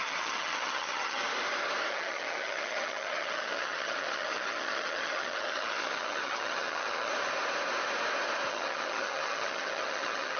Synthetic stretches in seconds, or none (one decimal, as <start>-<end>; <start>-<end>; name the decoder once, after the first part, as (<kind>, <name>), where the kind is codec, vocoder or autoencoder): 0.0-1.2 (vocoder, HiFi-GAN); 1.9-7.1; 8.5-10.4